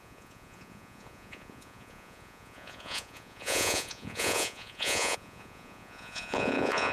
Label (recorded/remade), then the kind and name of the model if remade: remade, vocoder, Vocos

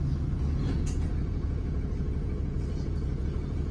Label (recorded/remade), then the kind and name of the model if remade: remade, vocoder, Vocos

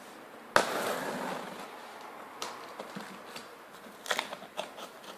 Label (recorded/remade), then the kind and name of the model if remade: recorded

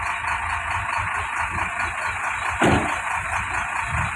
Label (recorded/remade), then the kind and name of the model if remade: recorded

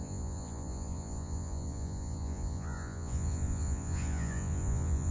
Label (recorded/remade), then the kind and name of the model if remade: remade, vocoder, Vocos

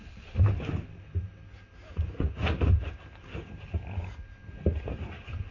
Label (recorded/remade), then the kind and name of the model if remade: recorded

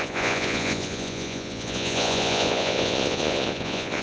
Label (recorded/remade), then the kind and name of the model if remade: remade, vocoder, Vocos